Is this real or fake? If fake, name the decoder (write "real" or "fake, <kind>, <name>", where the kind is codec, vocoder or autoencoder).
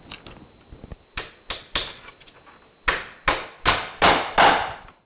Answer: real